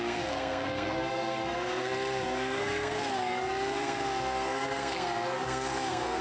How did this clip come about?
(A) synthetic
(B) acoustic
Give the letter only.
A